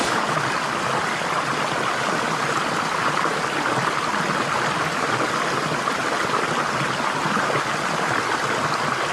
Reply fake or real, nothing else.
real